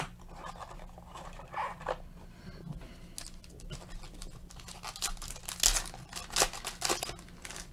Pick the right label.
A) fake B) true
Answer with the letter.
B